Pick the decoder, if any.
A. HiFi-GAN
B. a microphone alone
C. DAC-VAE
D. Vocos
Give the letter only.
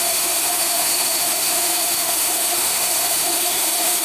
C